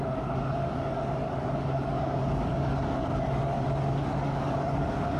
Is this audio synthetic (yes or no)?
yes